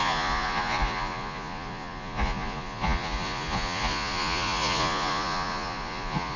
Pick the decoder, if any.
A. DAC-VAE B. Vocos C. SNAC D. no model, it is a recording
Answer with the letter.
B